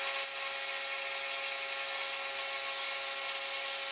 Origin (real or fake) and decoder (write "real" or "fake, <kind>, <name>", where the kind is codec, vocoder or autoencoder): real